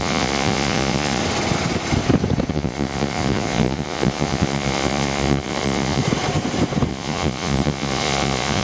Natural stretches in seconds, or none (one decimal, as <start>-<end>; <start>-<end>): 1.2-2.5; 6.0-6.9